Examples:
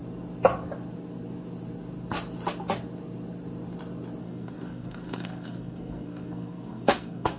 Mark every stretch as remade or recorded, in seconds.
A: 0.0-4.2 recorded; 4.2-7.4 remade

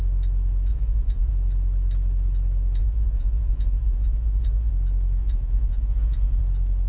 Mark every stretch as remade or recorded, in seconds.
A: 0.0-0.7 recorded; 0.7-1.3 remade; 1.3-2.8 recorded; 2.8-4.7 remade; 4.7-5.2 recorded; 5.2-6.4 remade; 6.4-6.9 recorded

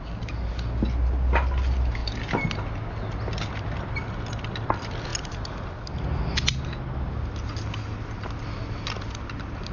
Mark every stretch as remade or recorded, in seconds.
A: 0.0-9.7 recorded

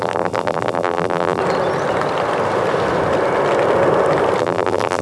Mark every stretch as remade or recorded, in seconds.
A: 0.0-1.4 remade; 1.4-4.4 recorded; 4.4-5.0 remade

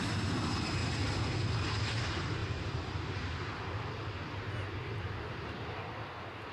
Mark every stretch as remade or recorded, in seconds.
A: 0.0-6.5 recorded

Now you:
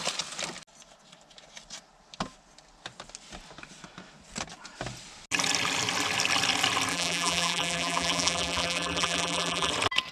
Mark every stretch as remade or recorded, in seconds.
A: 0.0-6.9 recorded; 6.9-9.7 remade; 9.7-10.1 recorded

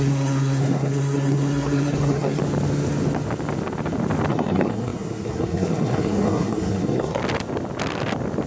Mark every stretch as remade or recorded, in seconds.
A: 0.0-2.4 remade; 2.4-4.3 recorded; 4.3-7.2 remade; 7.2-8.5 recorded

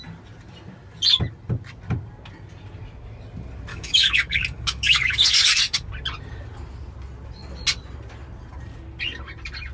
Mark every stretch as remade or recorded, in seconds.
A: 0.0-3.7 recorded; 3.7-5.9 remade; 5.9-9.7 recorded